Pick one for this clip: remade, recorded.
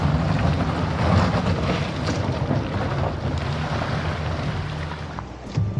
recorded